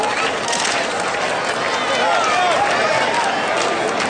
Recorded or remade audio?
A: recorded